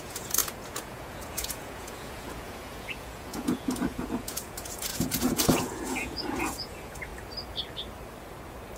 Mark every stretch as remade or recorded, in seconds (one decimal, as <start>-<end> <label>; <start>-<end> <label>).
0.0-7.1 remade; 7.1-8.8 recorded